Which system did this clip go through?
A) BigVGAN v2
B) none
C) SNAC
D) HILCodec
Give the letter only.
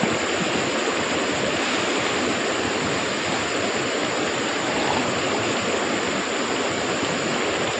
B